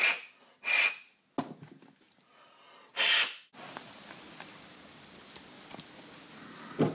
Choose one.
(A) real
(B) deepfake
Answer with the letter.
A